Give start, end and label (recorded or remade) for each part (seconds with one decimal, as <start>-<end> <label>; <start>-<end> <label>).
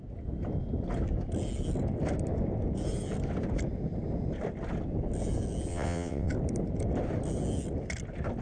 0.0-5.7 recorded; 5.7-6.3 remade; 6.3-8.4 recorded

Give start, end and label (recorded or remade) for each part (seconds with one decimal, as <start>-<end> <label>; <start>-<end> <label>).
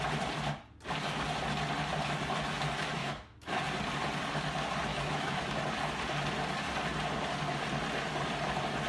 0.0-3.0 recorded; 3.0-3.6 remade; 3.6-4.9 recorded; 4.9-5.6 remade; 5.6-8.9 recorded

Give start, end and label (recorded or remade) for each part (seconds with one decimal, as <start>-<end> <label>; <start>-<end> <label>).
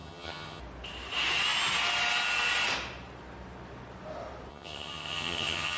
0.0-0.6 remade; 0.6-4.5 recorded; 4.5-5.8 remade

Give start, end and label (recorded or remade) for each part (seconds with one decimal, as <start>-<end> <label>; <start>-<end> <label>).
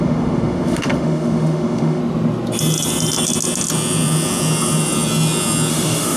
0.0-2.0 remade; 2.0-5.7 recorded; 5.7-6.2 remade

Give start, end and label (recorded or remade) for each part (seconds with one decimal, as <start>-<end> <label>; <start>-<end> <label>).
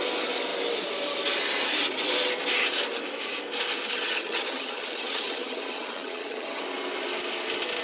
0.0-3.9 recorded; 3.9-6.6 remade; 6.6-7.8 recorded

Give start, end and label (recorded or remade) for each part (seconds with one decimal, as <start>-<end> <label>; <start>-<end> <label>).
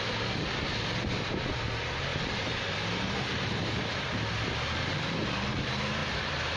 0.0-2.1 recorded; 2.1-4.2 remade; 4.2-6.0 recorded; 6.0-6.6 remade